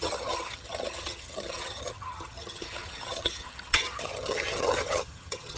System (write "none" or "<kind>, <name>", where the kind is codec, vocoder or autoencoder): vocoder, HiFi-GAN